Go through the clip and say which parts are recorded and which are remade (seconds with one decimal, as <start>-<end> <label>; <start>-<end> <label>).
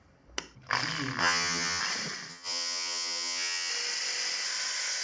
0.0-1.2 recorded; 1.2-1.8 remade; 1.8-2.3 recorded; 2.3-3.7 remade; 3.7-5.0 recorded